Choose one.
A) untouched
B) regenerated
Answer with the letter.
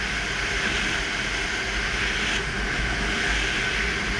A